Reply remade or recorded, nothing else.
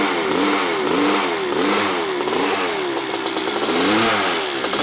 recorded